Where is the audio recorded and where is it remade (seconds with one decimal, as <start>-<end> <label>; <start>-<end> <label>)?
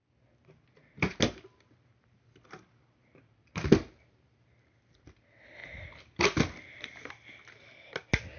0.0-5.6 recorded; 5.6-7.1 remade; 7.1-8.4 recorded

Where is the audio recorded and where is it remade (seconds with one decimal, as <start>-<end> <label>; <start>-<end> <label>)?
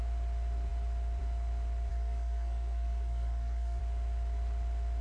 0.0-1.9 recorded; 1.9-3.8 remade; 3.8-5.0 recorded